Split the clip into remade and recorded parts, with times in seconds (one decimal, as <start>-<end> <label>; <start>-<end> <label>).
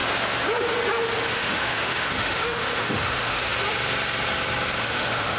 0.0-1.3 recorded; 1.3-3.5 remade; 3.5-4.8 recorded; 4.8-5.4 remade